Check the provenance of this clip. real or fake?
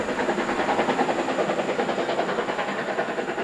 real